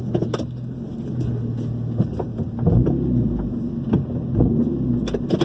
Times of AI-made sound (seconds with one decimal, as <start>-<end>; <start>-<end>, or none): none